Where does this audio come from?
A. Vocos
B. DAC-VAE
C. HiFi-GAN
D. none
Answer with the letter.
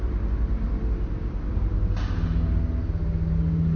D